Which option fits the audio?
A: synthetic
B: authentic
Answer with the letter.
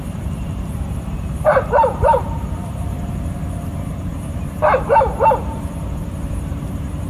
A